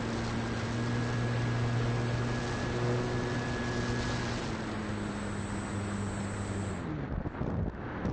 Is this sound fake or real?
real